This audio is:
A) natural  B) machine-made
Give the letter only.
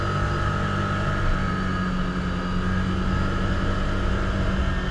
A